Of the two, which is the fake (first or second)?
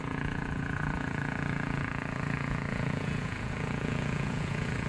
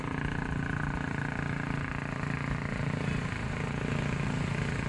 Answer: first